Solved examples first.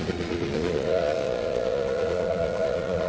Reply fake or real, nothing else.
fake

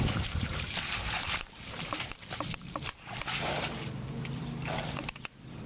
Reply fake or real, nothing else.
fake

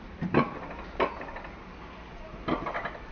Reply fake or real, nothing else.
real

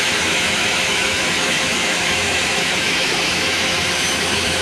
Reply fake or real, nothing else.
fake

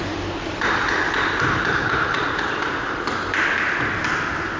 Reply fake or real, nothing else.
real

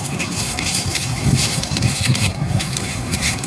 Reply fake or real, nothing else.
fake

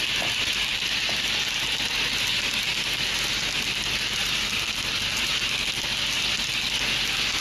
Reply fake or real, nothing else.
real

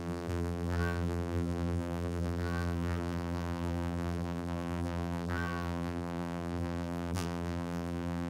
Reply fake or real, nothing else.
fake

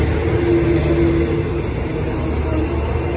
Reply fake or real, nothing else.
real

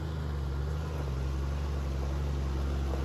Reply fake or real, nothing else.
real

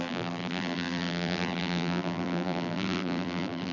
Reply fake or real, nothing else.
fake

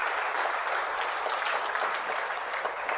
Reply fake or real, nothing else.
real